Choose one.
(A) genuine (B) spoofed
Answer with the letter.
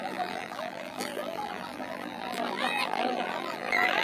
B